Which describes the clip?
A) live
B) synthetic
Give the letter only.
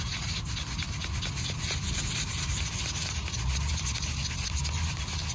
A